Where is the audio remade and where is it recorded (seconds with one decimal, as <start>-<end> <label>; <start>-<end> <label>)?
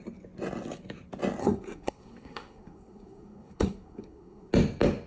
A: 0.0-1.4 recorded; 1.4-4.5 remade; 4.5-5.1 recorded